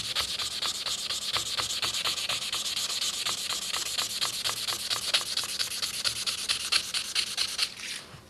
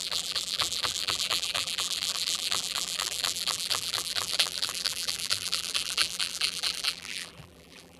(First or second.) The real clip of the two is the first